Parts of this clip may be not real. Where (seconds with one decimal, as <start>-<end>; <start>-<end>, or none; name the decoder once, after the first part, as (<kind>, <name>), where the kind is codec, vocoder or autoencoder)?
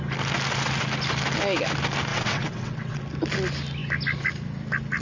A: 2.1-3.0 (vocoder, WaveNeXt)